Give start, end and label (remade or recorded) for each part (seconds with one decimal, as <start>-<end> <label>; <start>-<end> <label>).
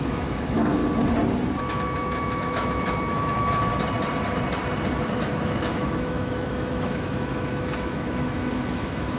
0.0-0.8 remade; 0.8-1.6 recorded; 1.6-3.7 remade; 3.7-5.1 recorded; 5.1-9.2 remade